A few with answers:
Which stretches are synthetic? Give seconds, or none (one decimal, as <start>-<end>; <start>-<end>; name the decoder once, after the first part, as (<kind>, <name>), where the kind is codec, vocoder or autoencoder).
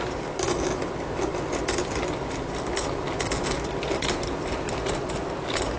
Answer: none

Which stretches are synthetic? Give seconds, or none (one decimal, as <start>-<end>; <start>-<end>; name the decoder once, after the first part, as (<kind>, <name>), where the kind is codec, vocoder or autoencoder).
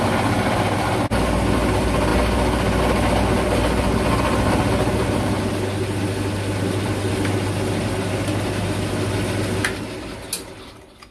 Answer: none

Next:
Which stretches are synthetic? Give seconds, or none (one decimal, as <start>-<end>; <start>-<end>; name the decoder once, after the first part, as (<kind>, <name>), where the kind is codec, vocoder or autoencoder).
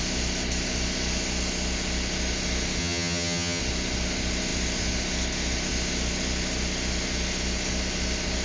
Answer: 2.8-3.6 (vocoder, HiFi-GAN)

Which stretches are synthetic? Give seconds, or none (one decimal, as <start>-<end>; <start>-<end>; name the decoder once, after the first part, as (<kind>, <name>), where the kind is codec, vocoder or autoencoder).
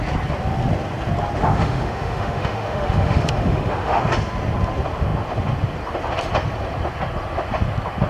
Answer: 1.4-4.0 (autoencoder, DAC-VAE)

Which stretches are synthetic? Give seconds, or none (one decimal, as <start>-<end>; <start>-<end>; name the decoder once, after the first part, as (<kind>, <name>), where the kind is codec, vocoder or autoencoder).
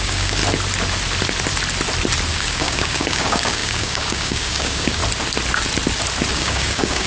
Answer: 0.0-0.4 (codec, DAC); 2.3-5.0; 6.3-7.1